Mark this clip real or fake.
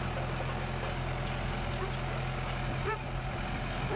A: real